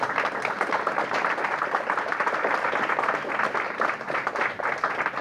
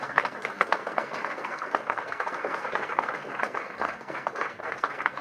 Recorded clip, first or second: first